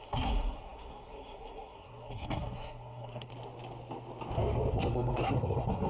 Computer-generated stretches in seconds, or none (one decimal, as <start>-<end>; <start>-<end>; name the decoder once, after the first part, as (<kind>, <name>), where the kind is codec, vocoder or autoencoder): 0.0-3.3 (codec, SNAC); 4.7-5.9